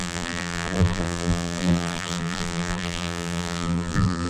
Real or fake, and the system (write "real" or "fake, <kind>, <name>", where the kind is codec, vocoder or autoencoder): fake, vocoder, BigVGAN v2